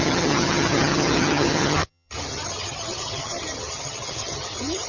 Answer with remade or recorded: remade